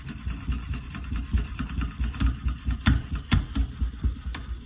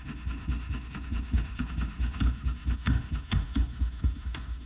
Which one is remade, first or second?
second